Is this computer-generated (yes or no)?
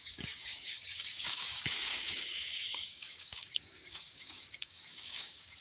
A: yes